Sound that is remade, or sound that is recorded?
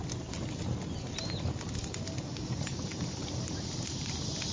recorded